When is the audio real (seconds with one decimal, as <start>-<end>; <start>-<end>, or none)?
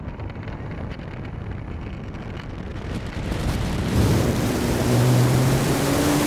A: 0.0-2.7; 5.6-6.3